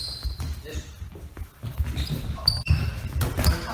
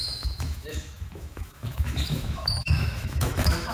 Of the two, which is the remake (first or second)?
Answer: second